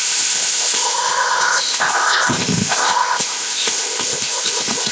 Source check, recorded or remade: remade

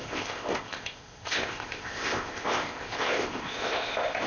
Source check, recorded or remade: remade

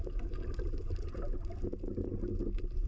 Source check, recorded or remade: recorded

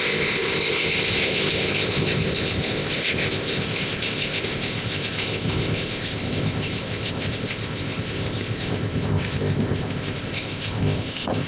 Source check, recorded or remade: remade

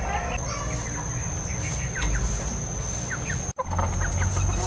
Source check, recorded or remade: recorded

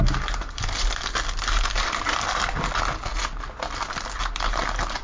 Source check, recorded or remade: recorded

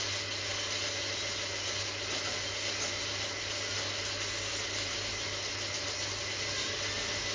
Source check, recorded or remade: recorded